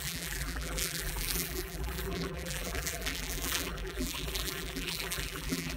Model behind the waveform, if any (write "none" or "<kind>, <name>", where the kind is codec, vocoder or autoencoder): vocoder, BigVGAN v2